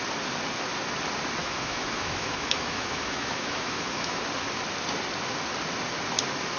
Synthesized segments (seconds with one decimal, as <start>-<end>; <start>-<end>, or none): 1.4-4.2